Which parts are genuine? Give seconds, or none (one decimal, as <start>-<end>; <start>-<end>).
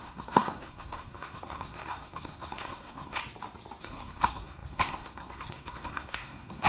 3.2-3.8